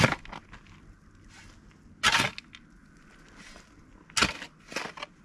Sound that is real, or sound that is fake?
real